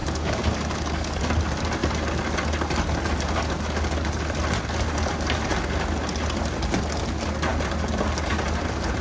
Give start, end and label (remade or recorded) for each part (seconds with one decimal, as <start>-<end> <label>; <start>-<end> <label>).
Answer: 0.0-1.3 remade; 1.3-9.0 recorded

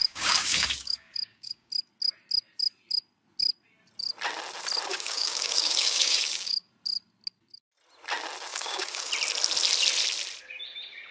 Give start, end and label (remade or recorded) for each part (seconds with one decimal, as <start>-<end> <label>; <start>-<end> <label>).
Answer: 0.0-1.7 remade; 1.7-4.9 recorded; 4.9-6.7 remade; 6.7-8.5 recorded; 8.5-9.1 remade; 9.1-11.1 recorded

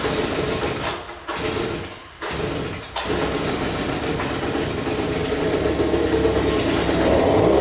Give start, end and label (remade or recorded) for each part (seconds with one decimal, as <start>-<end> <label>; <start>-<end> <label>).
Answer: 0.0-7.6 recorded